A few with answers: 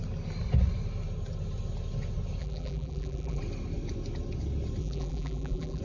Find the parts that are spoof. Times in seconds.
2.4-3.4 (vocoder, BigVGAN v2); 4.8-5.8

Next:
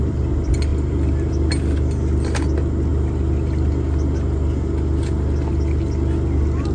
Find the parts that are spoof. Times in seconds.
none

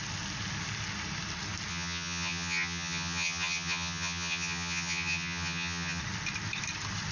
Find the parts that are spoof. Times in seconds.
1.7-6.0 (vocoder, HiFi-GAN)

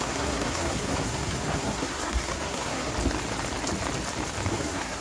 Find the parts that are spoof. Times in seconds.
0.0-2.9 (codec, SNAC); 4.5-5.0